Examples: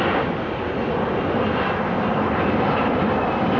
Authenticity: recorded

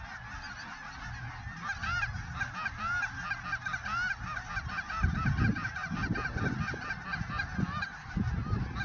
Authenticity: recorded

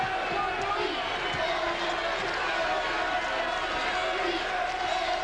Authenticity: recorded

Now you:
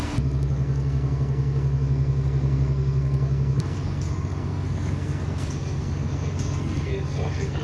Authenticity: remade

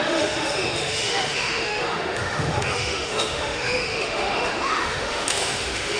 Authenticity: remade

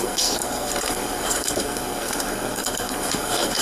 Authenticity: remade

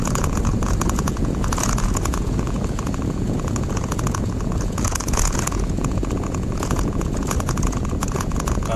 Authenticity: remade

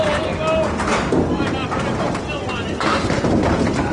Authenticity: recorded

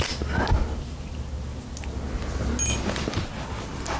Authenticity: recorded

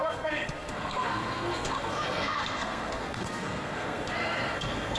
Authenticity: remade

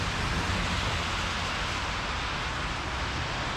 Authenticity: recorded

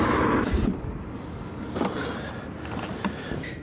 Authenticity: recorded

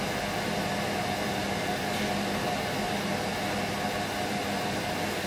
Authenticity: recorded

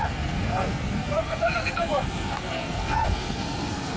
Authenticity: remade